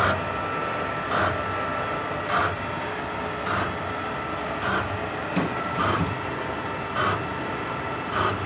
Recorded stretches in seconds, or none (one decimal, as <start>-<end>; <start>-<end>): 0.0-8.5